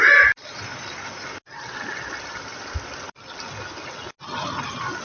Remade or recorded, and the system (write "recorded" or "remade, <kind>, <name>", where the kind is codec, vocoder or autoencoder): recorded